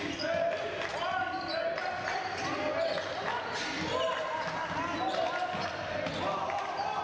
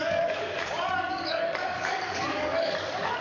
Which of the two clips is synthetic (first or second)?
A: second